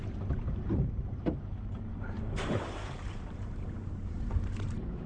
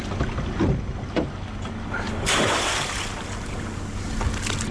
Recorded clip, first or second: second